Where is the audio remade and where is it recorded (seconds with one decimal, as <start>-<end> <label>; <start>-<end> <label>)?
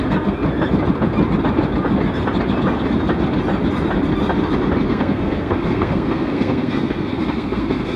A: 0.0-0.4 remade; 0.4-4.9 recorded; 4.9-8.0 remade